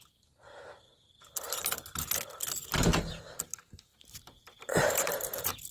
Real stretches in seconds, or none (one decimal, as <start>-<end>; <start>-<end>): 0.0-3.9